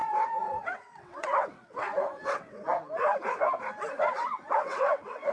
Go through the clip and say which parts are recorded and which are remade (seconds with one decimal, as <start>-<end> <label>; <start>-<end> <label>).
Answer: 0.0-2.7 remade; 2.7-4.0 recorded; 4.0-5.3 remade